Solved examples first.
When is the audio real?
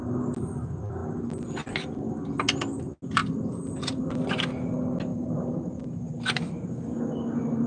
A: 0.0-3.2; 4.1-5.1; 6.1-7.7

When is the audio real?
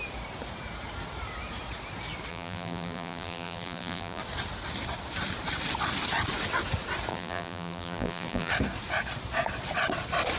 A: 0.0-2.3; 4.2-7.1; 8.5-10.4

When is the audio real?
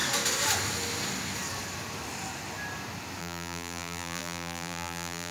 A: 0.0-3.2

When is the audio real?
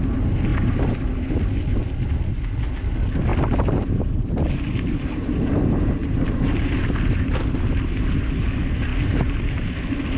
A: 0.0-0.5; 1.3-3.3; 7.3-10.2